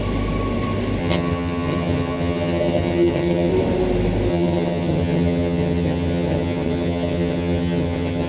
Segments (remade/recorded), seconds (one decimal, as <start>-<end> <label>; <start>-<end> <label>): 0.0-1.0 recorded; 1.0-3.5 remade; 3.5-4.3 recorded; 4.3-8.3 remade